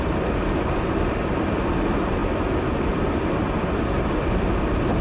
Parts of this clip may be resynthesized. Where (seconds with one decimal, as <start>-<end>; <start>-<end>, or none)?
2.2-3.0